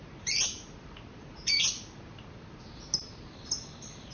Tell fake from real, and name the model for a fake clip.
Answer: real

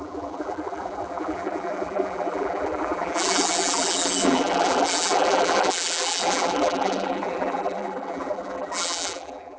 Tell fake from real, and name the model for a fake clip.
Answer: fake, vocoder, BigVGAN v2